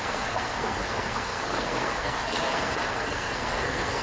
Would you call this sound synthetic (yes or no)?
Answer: yes